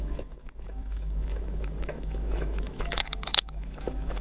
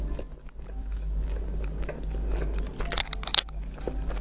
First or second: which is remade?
first